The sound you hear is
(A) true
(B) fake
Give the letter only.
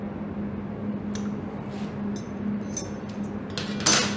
A